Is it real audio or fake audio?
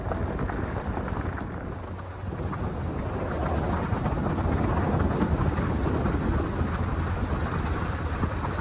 real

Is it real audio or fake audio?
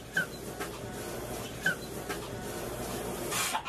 real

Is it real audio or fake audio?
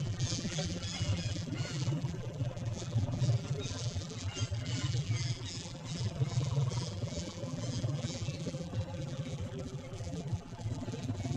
fake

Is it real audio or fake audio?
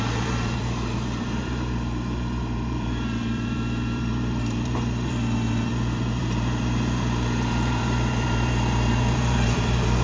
fake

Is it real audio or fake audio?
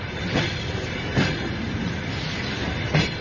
fake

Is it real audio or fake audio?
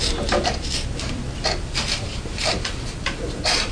fake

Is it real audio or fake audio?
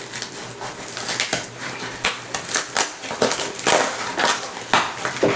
real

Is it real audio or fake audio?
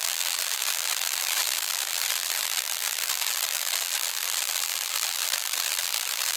fake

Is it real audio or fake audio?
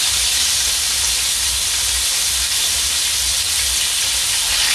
real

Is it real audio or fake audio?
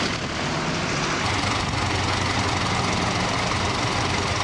real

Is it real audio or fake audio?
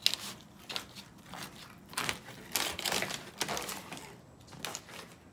real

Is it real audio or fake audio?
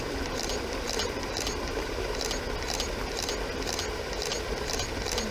real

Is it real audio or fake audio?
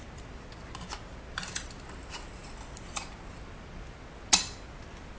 real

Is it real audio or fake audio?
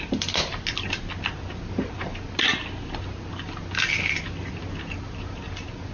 real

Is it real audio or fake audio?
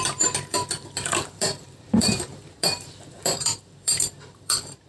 fake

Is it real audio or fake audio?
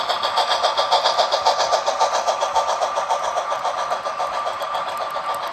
real